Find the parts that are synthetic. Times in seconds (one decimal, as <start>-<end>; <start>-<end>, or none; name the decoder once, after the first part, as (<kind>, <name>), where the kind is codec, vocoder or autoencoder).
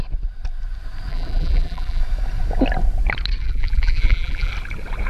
1.1-2.0 (vocoder, BigVGAN v2); 3.4-4.5